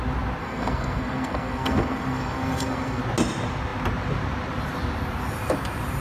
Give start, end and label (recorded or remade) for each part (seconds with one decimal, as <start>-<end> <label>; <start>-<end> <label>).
0.0-0.4 recorded; 0.4-3.0 remade; 3.0-6.0 recorded